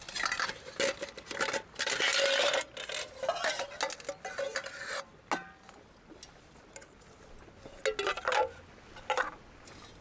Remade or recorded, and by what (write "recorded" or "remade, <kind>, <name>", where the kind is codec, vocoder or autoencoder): recorded